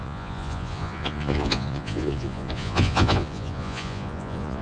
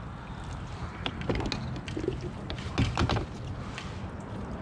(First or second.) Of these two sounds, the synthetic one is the first